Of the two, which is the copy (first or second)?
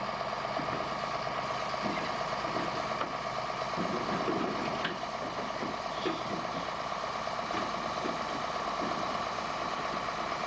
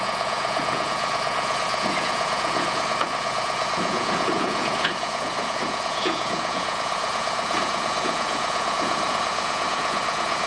second